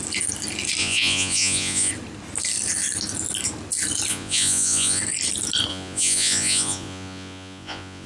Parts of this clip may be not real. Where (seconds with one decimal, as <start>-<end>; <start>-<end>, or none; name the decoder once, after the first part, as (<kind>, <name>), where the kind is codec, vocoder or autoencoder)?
0.8-1.9 (vocoder, Vocos); 4.1-5.0; 5.7-8.1